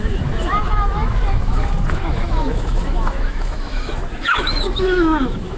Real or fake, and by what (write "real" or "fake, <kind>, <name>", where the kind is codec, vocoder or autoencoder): fake, autoencoder, DAC-VAE